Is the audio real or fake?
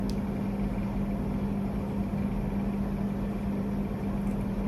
real